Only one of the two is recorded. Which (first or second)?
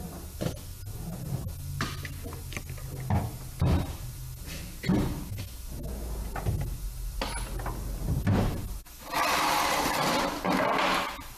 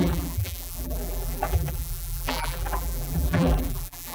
first